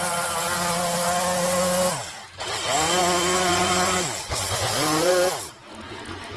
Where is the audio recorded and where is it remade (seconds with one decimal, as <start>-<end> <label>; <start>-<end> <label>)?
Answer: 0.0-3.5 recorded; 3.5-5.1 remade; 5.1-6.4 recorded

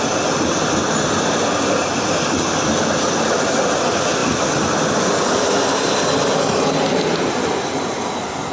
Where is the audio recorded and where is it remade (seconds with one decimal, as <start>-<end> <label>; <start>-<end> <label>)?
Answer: 0.0-8.5 recorded

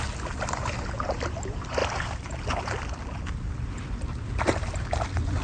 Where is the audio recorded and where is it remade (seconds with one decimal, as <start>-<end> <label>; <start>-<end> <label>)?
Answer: 0.0-5.4 recorded

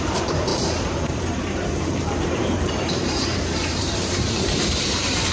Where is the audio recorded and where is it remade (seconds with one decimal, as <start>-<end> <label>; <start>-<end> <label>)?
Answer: 0.0-5.3 remade

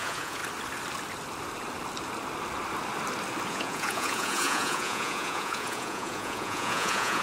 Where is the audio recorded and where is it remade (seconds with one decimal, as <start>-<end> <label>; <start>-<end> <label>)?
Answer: 0.0-0.4 remade; 0.4-3.5 recorded; 3.5-7.2 remade

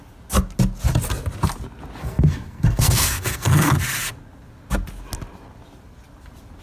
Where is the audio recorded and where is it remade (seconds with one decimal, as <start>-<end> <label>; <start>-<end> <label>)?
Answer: 0.0-2.0 recorded; 2.0-3.7 remade; 3.7-6.6 recorded

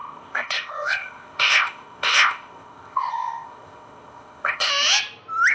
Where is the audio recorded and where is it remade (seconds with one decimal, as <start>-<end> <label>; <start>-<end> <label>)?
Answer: 0.0-4.7 remade; 4.7-5.5 recorded